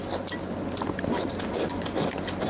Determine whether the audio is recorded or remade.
recorded